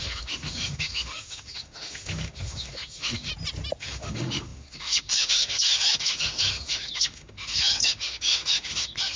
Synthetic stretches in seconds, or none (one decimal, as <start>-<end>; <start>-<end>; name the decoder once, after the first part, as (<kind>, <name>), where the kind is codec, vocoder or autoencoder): 0.0-3.3 (autoencoder, DAC-VAE); 3.8-9.2